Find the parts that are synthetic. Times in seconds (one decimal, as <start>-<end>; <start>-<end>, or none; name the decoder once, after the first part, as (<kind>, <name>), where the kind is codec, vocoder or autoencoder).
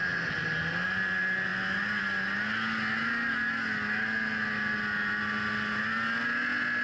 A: none